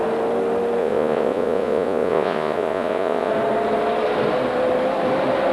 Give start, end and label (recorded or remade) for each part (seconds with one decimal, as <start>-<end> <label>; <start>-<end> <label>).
0.0-0.8 recorded; 0.8-3.3 remade; 3.3-5.5 recorded